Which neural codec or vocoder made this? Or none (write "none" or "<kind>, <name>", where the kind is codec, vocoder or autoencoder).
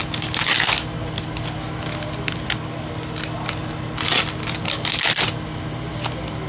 none